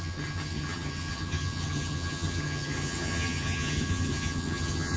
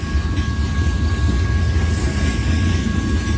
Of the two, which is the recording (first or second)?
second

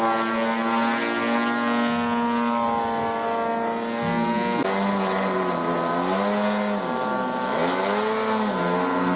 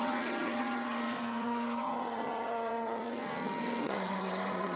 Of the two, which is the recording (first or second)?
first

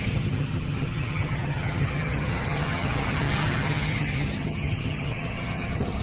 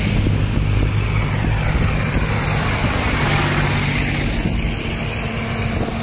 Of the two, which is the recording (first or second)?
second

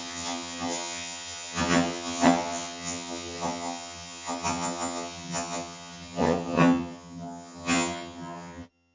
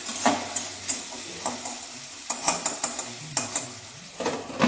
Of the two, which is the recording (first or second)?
second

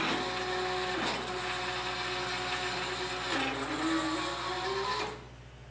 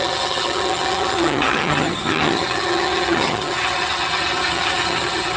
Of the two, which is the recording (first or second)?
first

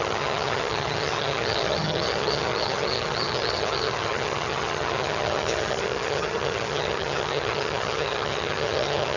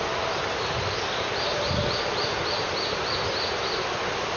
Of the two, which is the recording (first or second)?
second